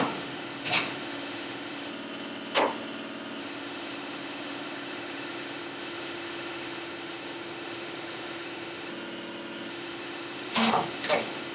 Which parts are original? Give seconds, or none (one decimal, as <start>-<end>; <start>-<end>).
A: 1.9-3.4; 8.9-9.7